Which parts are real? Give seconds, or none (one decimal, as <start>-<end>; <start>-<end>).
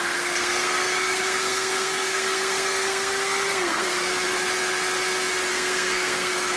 4.1-5.5